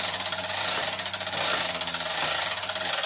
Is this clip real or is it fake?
real